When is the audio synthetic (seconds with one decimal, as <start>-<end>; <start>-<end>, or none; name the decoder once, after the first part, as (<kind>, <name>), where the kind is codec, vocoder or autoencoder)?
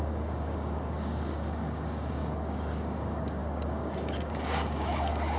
0.0-5.4 (codec, DAC)